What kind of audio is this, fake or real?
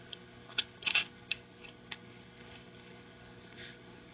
fake